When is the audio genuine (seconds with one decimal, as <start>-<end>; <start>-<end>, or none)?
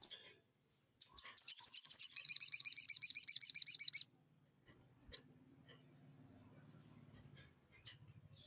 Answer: 0.0-1.2; 3.6-8.5